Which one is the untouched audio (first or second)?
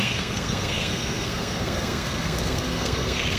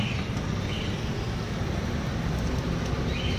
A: second